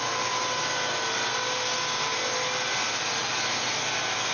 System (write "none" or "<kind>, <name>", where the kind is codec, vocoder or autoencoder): none